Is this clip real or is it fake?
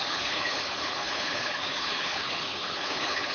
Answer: fake